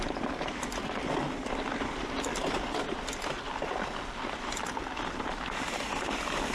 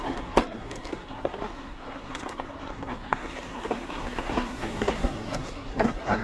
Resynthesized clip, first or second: second